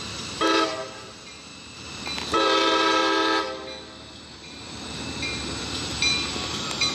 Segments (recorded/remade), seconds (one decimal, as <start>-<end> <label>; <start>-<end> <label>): 0.0-3.0 remade; 3.0-4.0 recorded; 4.0-6.9 remade